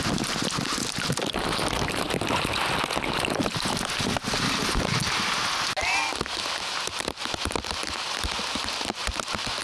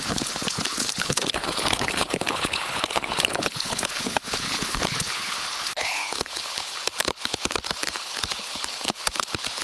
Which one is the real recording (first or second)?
first